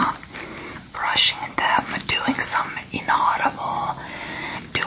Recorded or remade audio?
recorded